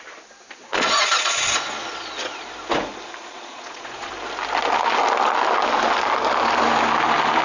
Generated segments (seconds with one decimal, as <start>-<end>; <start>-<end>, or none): 0.6-1.7; 3.2-4.1